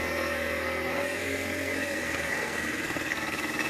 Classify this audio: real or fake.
fake